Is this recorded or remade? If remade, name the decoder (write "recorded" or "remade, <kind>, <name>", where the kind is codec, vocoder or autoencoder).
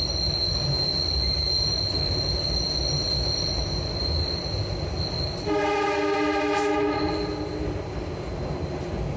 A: recorded